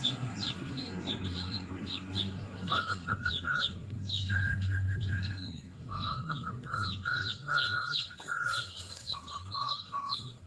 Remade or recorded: remade